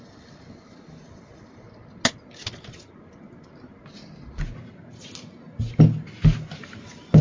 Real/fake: real